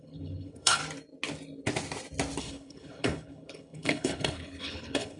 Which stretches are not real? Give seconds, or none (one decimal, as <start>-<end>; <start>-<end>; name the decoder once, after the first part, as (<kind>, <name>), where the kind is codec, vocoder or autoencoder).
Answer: 0.0-0.8 (codec, HILCodec); 2.4-5.2